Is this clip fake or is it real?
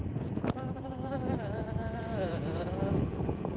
fake